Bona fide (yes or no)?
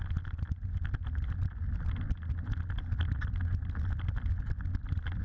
yes